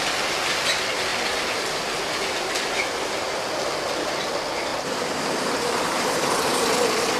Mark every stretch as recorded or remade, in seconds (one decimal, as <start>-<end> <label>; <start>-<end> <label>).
0.0-4.7 recorded; 4.7-6.6 remade; 6.6-7.2 recorded